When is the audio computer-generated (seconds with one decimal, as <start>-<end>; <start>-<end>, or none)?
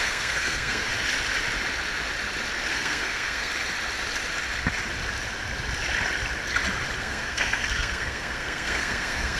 0.0-0.9; 2.7-3.5; 7.0-9.4